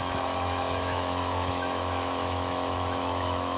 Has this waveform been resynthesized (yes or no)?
yes